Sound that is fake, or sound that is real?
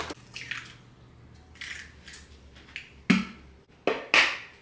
real